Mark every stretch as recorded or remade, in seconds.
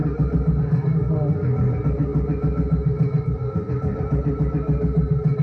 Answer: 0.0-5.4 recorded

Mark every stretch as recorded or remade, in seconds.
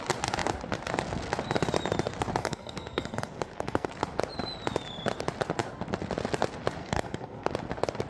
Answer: 0.0-2.4 recorded; 2.4-4.0 remade; 4.0-6.8 recorded; 6.8-7.5 remade; 7.5-8.1 recorded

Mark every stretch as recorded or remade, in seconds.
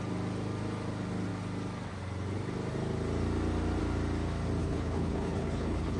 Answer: 0.0-4.6 recorded; 4.6-6.0 remade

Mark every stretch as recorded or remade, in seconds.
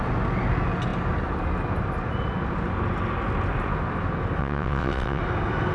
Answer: 0.0-4.4 recorded; 4.4-5.2 remade; 5.2-5.7 recorded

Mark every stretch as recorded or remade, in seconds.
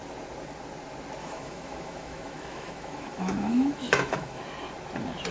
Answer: 0.0-1.2 recorded; 1.2-4.4 remade; 4.4-5.3 recorded